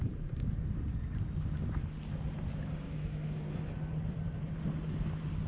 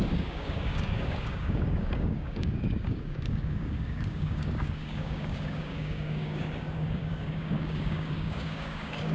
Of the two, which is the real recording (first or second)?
first